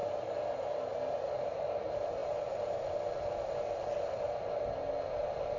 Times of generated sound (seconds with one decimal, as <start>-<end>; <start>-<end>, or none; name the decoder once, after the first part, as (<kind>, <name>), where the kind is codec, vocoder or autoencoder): none